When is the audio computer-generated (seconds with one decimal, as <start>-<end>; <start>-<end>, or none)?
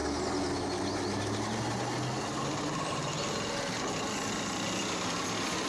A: none